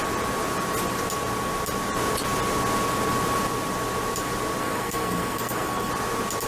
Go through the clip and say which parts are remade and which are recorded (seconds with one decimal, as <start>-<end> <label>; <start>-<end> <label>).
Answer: 0.0-4.6 recorded; 4.6-5.9 remade; 5.9-6.5 recorded